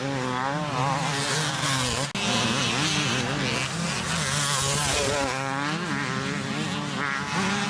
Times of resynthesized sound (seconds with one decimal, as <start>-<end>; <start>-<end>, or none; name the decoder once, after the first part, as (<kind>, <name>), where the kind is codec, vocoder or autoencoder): none